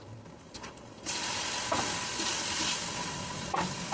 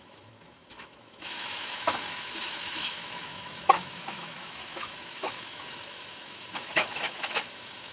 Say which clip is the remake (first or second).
second